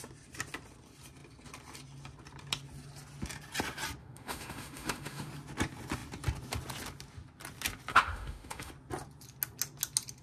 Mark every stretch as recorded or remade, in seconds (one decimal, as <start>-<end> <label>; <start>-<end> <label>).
0.0-4.0 recorded; 4.0-5.3 remade; 5.3-7.9 recorded; 7.9-8.7 remade; 8.7-10.2 recorded